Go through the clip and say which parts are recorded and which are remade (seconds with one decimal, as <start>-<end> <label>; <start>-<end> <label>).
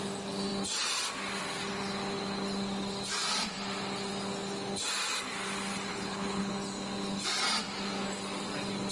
0.0-5.9 recorded; 5.9-6.5 remade; 6.5-8.9 recorded